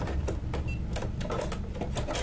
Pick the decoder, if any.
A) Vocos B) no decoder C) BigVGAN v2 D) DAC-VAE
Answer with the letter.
B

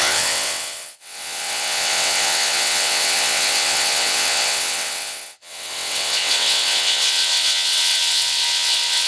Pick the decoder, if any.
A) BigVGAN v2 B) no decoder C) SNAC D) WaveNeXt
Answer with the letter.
D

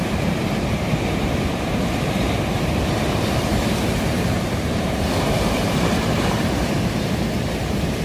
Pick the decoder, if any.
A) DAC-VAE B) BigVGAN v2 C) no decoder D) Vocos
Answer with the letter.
B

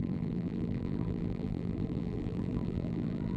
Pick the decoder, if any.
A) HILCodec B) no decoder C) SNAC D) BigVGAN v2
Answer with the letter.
D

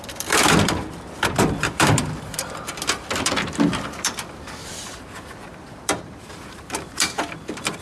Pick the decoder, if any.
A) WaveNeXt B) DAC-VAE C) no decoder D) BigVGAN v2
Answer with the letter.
D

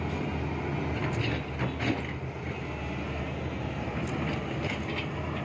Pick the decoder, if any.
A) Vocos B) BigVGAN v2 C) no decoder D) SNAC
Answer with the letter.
C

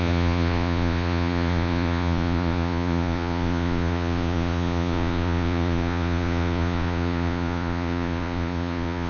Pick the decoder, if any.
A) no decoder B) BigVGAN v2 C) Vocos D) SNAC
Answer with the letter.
C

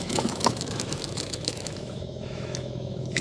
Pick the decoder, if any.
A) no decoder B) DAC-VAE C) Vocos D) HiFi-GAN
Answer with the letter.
B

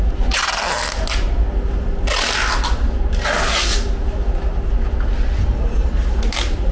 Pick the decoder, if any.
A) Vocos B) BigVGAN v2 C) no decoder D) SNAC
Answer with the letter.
C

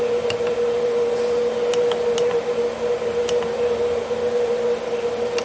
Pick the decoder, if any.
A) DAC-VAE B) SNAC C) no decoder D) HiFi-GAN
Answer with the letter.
C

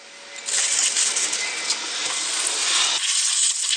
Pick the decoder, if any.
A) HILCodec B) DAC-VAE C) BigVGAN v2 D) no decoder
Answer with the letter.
D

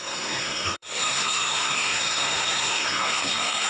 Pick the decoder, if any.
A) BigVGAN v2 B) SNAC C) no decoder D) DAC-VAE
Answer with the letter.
B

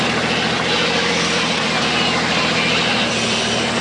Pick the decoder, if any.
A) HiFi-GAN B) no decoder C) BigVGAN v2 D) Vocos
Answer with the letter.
B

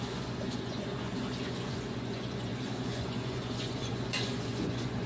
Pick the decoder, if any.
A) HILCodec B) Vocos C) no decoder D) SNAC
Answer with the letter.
B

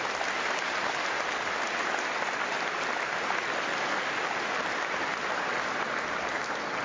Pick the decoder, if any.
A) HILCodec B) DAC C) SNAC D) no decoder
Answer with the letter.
D